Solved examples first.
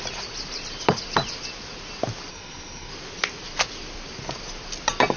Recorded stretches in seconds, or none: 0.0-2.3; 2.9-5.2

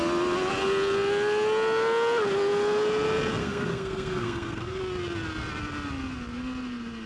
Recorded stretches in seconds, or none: 0.0-3.4; 4.8-7.1

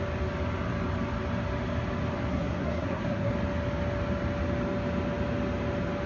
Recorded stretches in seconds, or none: 0.0-2.3; 3.3-6.1

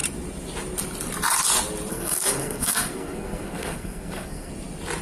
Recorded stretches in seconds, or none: 0.0-1.9; 4.5-5.0

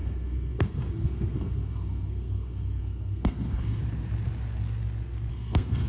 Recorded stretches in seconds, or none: 3.8-5.3

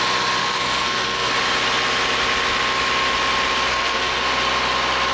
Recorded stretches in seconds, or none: 0.0-0.4; 1.3-3.7; 4.2-5.1

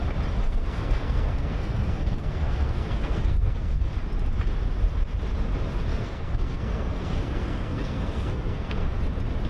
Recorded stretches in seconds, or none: 0.0-0.4; 3.9-5.9; 9.0-9.5

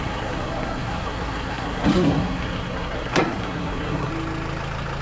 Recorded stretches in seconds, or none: 4.1-5.0